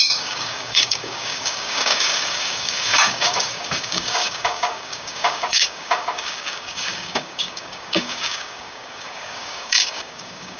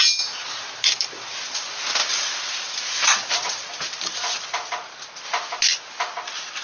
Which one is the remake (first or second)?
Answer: first